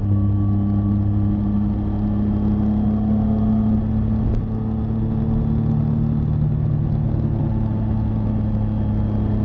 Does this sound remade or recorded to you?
recorded